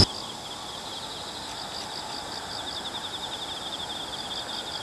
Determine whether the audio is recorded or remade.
recorded